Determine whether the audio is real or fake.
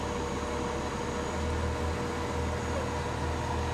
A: real